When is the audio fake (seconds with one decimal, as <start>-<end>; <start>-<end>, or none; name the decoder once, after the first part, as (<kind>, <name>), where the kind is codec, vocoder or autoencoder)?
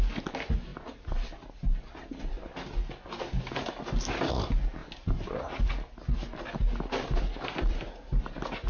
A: none